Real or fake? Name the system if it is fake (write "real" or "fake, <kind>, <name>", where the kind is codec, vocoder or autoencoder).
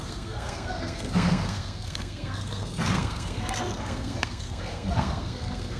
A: fake, codec, SNAC